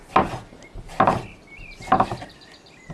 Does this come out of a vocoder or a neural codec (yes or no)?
no